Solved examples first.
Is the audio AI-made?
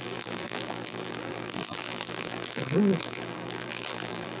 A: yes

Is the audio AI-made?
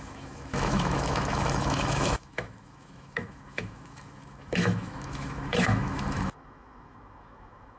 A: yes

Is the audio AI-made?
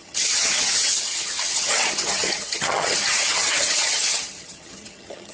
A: yes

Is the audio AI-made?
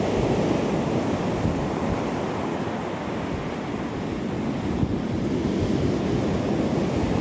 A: no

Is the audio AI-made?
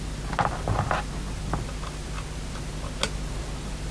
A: no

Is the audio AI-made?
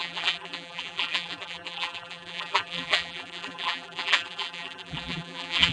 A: yes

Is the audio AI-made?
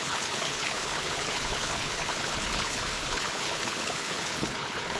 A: yes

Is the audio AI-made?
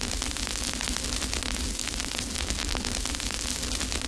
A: no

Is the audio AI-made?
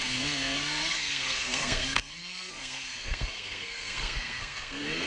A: yes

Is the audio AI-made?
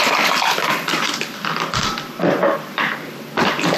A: yes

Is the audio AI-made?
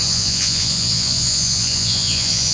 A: yes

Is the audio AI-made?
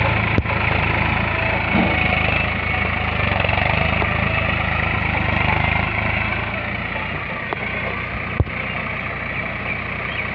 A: no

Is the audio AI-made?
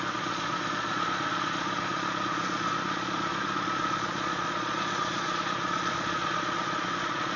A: yes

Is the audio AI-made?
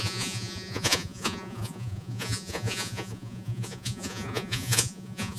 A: yes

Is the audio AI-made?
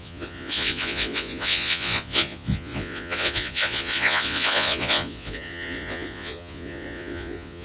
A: yes